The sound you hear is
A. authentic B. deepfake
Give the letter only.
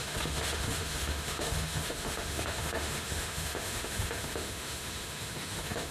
B